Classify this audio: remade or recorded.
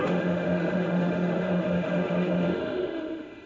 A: remade